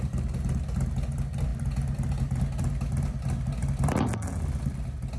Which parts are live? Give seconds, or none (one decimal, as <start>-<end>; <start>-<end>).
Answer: 0.0-5.2